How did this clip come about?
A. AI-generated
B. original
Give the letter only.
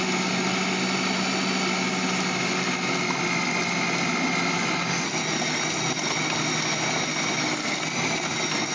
B